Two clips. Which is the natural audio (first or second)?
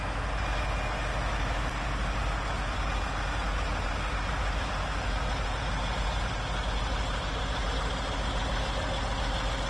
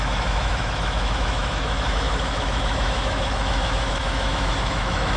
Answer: first